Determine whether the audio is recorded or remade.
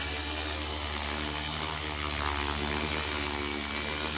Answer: recorded